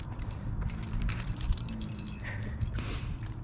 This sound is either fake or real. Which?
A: fake